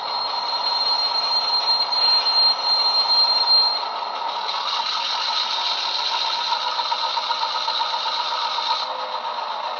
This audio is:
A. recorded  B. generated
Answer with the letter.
A